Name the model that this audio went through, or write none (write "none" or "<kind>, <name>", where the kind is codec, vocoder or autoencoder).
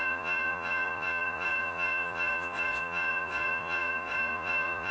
vocoder, Vocos